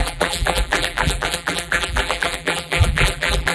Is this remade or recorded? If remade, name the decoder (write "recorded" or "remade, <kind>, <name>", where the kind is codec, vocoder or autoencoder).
remade, vocoder, BigVGAN v2